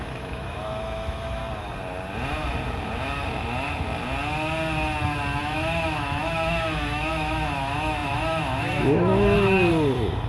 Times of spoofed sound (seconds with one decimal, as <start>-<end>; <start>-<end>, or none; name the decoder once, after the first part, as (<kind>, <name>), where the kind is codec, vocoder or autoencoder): 0.0-1.4 (autoencoder, DAC-VAE); 5.4-9.7